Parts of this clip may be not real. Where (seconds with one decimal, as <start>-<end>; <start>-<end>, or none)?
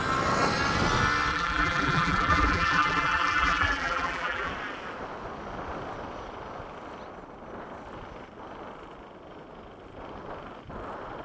1.3-4.5